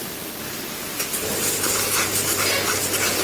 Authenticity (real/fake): real